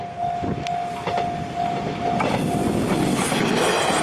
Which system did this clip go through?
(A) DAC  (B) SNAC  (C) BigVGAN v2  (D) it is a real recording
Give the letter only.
D